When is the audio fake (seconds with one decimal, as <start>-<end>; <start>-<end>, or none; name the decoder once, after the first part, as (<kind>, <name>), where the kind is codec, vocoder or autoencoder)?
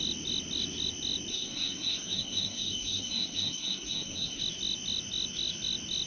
1.3-4.4 (codec, SNAC)